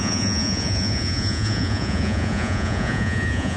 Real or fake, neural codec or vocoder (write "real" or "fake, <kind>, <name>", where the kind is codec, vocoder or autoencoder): fake, vocoder, Vocos